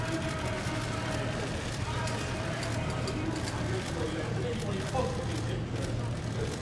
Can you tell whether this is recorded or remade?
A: recorded